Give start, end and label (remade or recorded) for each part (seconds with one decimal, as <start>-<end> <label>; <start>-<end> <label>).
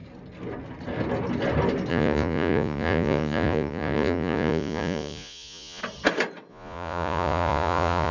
0.0-1.9 recorded; 1.9-5.8 remade; 5.8-6.5 recorded; 6.5-8.1 remade